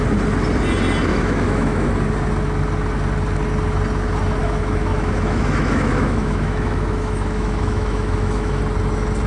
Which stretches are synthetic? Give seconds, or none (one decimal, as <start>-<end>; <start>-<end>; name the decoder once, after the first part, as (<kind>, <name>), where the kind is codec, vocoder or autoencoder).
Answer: 1.1-1.9 (autoencoder, DAC-VAE); 4.4-8.6